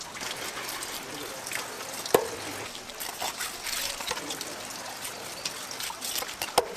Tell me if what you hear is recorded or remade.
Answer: recorded